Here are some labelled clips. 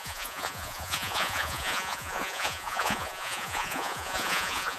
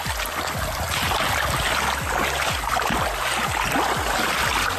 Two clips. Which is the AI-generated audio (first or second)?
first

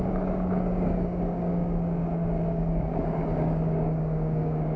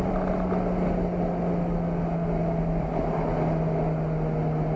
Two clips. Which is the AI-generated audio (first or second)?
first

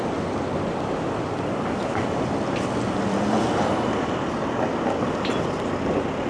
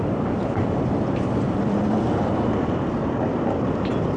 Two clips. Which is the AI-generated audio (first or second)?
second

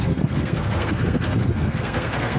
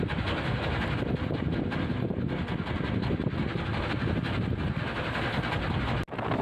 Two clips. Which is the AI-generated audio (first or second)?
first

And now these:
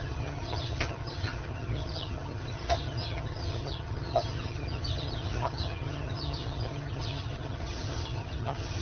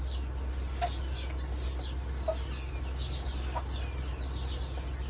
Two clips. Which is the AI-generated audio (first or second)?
first